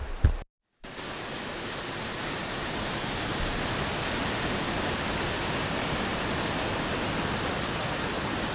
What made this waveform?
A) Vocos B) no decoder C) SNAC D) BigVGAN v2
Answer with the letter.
B